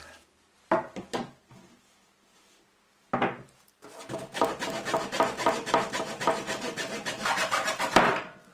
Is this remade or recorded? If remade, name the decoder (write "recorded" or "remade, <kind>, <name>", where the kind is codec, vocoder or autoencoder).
recorded